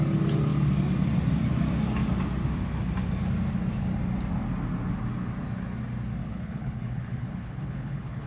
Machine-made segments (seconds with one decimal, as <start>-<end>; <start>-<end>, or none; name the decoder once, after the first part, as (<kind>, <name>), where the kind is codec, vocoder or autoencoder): 6.2-8.3 (codec, HILCodec)